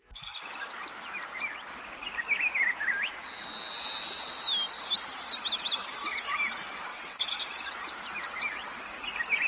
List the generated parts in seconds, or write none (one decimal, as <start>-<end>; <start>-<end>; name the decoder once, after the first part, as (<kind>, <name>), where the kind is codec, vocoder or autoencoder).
6.9-7.7 (vocoder, WaveNeXt)